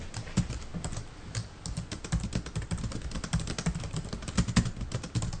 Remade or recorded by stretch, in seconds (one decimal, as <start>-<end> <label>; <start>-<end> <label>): 0.0-5.4 recorded